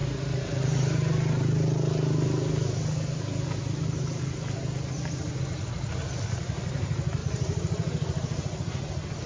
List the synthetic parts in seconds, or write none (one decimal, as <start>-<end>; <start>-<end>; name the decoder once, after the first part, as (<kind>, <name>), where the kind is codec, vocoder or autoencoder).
none